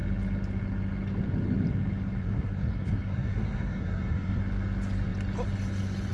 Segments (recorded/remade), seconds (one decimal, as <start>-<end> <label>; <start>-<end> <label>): 0.0-2.2 recorded; 2.2-4.4 remade; 4.4-6.1 recorded

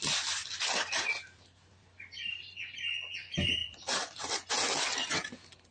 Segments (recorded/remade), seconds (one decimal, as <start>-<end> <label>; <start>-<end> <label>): 0.0-5.7 recorded

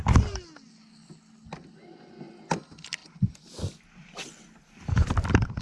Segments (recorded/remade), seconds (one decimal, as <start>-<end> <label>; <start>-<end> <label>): 0.0-5.6 recorded

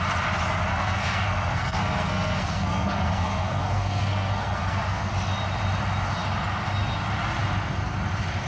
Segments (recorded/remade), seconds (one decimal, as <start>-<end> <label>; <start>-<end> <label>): 0.0-0.7 recorded; 0.7-5.1 remade; 5.1-8.5 recorded

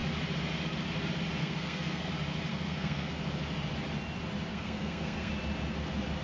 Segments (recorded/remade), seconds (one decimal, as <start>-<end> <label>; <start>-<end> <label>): 0.0-1.4 recorded; 1.4-2.1 remade; 2.1-2.5 recorded; 2.5-3.1 remade; 3.1-4.5 recorded; 4.5-5.3 remade; 5.3-6.2 recorded

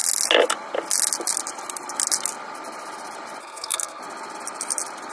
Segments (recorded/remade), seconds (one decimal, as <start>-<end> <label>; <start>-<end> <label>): 0.0-3.4 recorded; 3.4-4.0 remade; 4.0-5.1 recorded